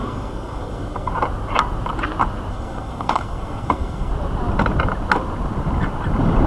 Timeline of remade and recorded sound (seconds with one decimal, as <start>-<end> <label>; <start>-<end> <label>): 0.0-1.1 remade; 1.1-2.5 recorded; 2.5-4.1 remade; 4.1-6.5 recorded